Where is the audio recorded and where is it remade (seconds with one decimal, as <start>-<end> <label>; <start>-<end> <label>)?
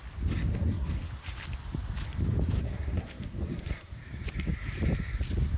0.0-0.5 recorded; 0.5-1.1 remade; 1.1-2.6 recorded; 2.6-3.9 remade; 3.9-5.6 recorded